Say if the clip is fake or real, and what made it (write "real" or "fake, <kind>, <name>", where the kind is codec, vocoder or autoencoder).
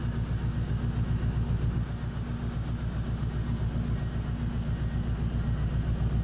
real